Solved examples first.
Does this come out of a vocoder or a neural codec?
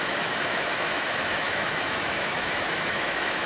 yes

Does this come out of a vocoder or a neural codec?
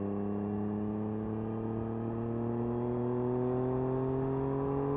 no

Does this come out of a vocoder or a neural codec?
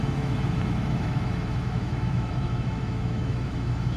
yes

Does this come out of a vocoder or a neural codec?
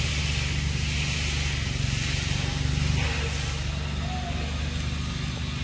no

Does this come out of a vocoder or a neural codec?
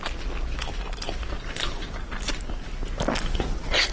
no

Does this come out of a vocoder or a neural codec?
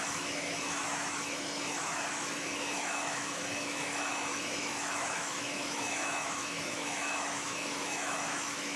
yes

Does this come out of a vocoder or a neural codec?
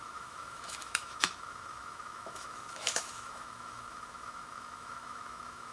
yes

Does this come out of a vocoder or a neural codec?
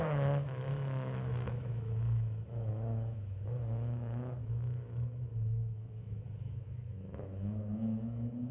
yes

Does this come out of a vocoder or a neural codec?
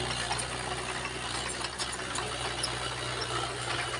no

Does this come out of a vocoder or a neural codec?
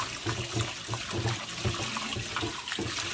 no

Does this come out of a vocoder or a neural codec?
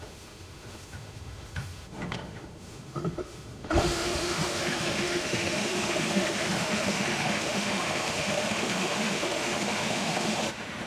yes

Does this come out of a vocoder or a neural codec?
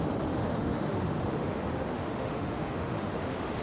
yes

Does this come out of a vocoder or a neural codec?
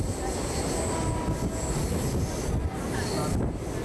no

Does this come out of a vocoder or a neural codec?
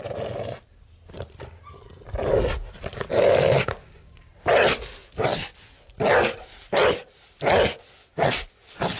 no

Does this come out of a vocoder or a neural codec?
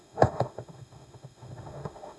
yes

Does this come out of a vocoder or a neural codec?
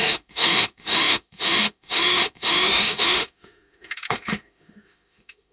yes